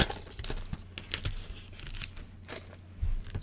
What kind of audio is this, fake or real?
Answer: real